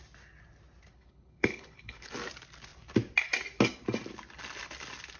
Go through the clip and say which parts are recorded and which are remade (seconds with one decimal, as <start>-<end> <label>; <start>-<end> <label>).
0.0-0.9 recorded; 0.9-2.1 remade; 2.1-5.2 recorded